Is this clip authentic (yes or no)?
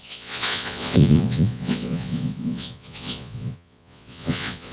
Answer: no